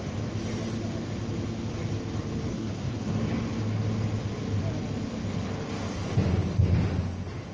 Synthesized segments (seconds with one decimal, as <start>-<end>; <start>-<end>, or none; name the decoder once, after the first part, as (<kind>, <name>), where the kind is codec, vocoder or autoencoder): 2.5-3.2 (codec, SNAC)